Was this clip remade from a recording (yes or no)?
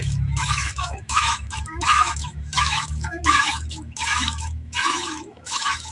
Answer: yes